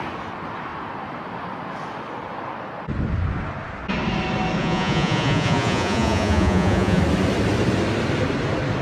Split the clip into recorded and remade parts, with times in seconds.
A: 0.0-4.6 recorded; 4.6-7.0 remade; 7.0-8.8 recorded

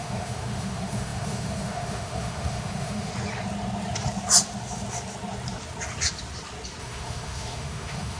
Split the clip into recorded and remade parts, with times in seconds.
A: 0.0-3.1 remade; 3.1-6.8 recorded; 6.8-8.2 remade

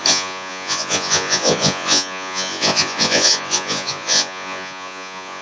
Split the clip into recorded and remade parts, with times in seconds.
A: 0.0-5.4 remade

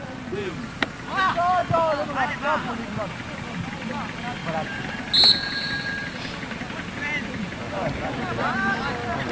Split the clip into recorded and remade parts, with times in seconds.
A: 0.0-9.3 recorded

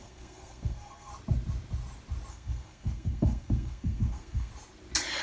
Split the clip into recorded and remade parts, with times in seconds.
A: 0.0-1.1 remade; 1.1-2.3 recorded; 2.3-4.5 remade; 4.5-5.2 recorded

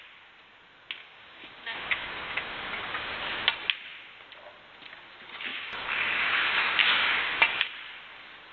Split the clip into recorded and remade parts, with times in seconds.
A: 0.0-1.0 recorded; 1.0-3.2 remade; 3.2-5.5 recorded; 5.5-7.7 remade; 7.7-8.5 recorded